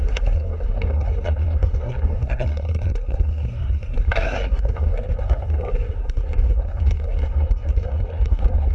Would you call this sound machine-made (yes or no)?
yes